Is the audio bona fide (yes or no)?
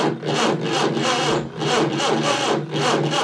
yes